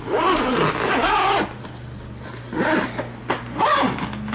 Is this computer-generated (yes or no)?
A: no